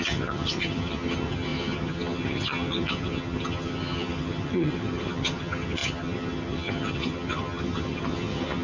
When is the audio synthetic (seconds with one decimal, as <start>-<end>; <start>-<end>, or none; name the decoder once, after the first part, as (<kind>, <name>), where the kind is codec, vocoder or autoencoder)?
0.0-8.6 (vocoder, HiFi-GAN)